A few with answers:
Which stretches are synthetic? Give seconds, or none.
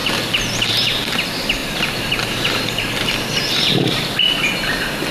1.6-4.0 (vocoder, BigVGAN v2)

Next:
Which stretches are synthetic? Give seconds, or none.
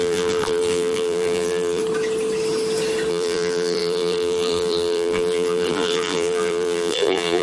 0.0-1.8 (vocoder, BigVGAN v2); 3.1-7.4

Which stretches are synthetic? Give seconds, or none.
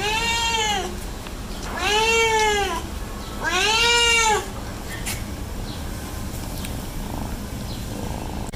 none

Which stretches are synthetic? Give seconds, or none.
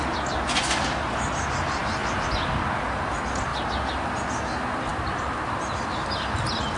none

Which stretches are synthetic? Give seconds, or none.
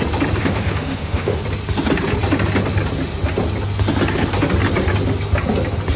0.4-1.4 (autoencoder, DAC-VAE)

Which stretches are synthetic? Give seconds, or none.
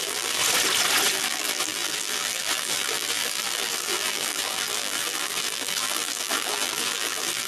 0.0-0.4 (vocoder, BigVGAN v2); 1.1-7.5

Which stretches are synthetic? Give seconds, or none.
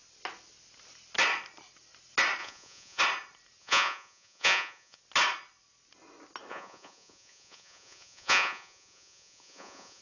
2.4-3.0 (vocoder, Vocos); 3.6-5.0; 6.5-10.0